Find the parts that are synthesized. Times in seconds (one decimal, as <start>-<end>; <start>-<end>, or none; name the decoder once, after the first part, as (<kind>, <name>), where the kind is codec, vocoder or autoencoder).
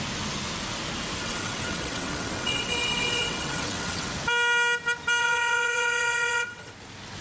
1.2-4.1 (vocoder, WaveNeXt); 5.2-6.7